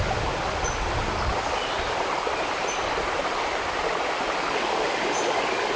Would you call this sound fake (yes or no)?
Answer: no